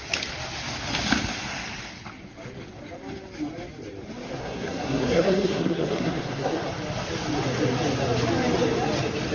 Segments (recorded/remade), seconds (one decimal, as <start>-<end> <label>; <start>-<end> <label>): 0.0-4.4 recorded; 4.4-6.7 remade; 6.7-9.3 recorded